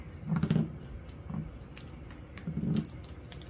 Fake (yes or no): no